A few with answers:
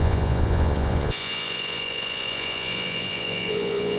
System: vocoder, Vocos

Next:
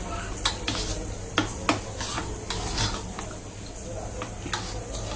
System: none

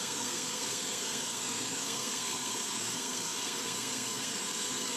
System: codec, SNAC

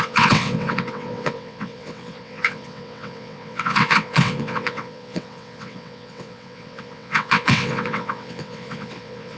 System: vocoder, WaveNeXt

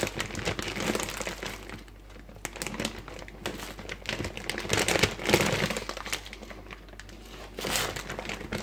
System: none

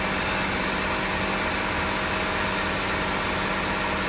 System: none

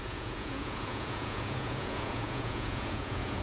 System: vocoder, Vocos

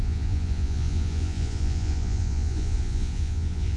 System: vocoder, Vocos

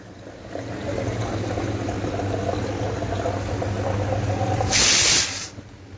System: none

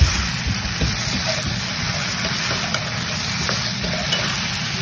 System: none